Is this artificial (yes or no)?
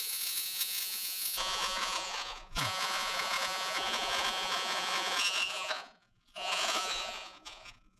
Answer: yes